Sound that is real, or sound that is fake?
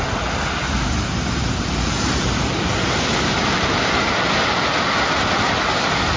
real